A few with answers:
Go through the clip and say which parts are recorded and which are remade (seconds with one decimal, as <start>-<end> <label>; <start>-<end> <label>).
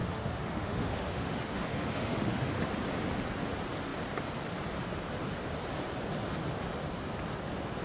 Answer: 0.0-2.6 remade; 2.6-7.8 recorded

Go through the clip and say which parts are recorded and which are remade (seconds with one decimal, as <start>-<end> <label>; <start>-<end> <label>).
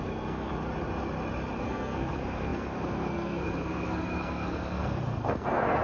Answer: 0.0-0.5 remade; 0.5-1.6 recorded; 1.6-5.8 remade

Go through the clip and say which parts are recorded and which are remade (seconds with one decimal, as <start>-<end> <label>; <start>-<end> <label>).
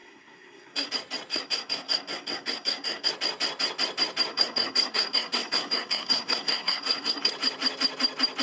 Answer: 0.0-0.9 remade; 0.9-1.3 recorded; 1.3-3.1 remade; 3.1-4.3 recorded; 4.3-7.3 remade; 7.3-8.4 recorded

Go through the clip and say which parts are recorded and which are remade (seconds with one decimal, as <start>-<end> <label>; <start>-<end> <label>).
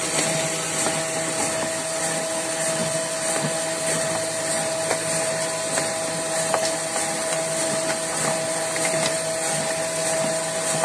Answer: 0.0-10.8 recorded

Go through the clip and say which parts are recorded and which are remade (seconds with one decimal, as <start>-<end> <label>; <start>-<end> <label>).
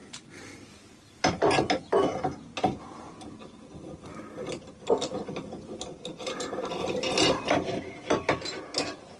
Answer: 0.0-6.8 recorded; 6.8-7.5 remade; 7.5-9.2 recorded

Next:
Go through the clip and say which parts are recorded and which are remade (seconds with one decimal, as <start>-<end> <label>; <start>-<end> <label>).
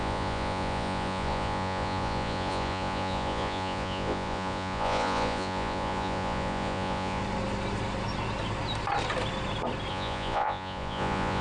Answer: 0.0-7.2 remade; 7.2-9.9 recorded; 9.9-11.4 remade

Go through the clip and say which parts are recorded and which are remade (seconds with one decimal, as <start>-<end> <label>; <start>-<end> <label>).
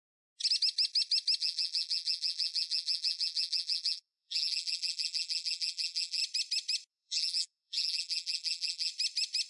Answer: 0.0-1.4 recorded; 1.4-6.2 remade; 6.2-6.9 recorded; 6.9-8.9 remade; 8.9-9.5 recorded